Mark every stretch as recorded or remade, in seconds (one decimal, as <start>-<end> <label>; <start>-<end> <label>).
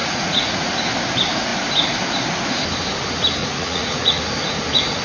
0.0-0.7 remade; 0.7-3.4 recorded; 3.4-4.2 remade; 4.2-5.0 recorded